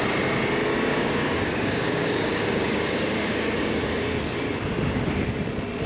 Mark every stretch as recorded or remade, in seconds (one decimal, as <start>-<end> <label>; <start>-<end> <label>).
0.0-0.7 recorded; 0.7-4.2 remade; 4.2-5.9 recorded

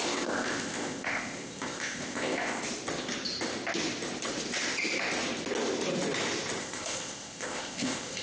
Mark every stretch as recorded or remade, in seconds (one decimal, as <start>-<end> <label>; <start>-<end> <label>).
0.0-2.6 remade; 2.6-6.6 recorded; 6.6-8.2 remade

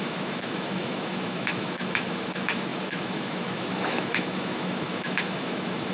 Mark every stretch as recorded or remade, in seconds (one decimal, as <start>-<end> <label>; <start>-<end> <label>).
0.0-5.9 remade

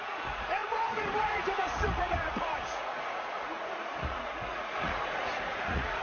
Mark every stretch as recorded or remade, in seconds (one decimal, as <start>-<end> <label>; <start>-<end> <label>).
0.0-6.0 remade

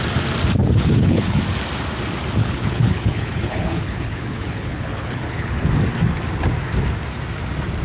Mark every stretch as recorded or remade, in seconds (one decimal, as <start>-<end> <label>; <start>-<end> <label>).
0.0-0.6 recorded; 0.6-1.4 remade; 1.4-2.4 recorded; 2.4-5.7 remade; 5.7-7.8 recorded